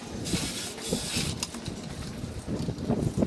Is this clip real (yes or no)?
yes